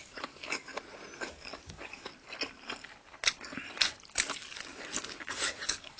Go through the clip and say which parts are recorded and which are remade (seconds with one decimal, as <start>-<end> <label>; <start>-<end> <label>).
0.0-0.7 remade; 0.7-1.3 recorded; 1.3-2.1 remade; 2.1-5.2 recorded; 5.2-6.0 remade